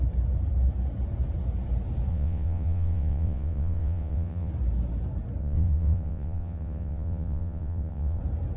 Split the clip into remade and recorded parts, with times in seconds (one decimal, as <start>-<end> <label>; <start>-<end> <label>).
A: 0.0-2.1 recorded; 2.1-4.5 remade; 4.5-5.4 recorded; 5.4-8.2 remade; 8.2-8.6 recorded